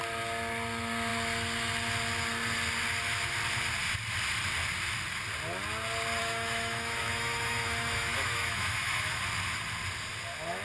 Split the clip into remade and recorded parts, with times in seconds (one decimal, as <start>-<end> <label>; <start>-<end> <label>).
0.0-6.2 recorded; 6.2-9.2 remade; 9.2-10.6 recorded